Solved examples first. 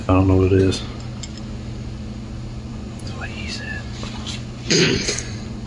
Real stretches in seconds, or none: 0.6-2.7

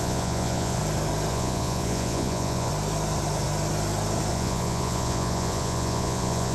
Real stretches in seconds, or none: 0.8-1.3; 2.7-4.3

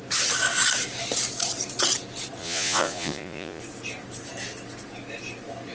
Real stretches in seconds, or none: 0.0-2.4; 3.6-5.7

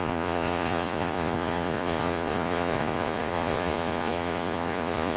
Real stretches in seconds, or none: none

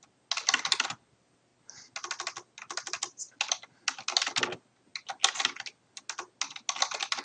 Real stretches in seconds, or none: 0.0-7.2

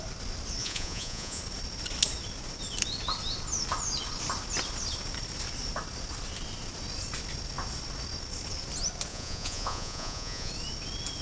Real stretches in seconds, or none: 0.0-0.6; 1.4-9.1; 10.5-11.2